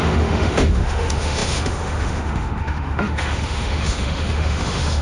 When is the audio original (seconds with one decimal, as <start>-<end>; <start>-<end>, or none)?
none